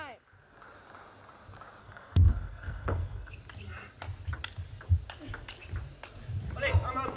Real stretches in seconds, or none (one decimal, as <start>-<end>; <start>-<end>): 0.0-1.8; 3.3-7.2